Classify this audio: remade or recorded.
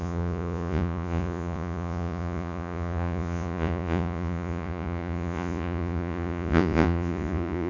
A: remade